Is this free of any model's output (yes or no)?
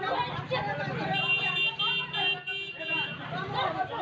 yes